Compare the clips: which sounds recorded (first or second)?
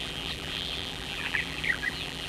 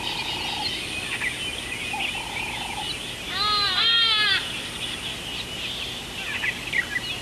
second